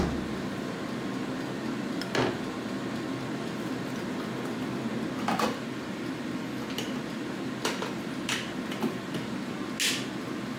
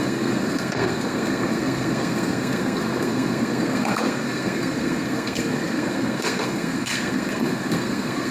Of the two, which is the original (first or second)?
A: first